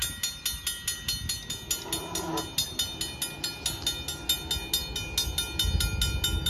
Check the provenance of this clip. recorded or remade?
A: recorded